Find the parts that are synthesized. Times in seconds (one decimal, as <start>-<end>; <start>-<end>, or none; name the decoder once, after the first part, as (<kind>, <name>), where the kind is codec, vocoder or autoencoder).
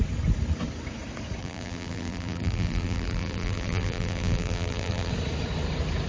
1.4-5.1 (vocoder, BigVGAN v2)